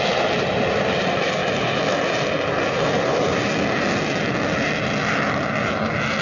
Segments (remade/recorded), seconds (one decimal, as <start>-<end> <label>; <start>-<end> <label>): 0.0-6.2 recorded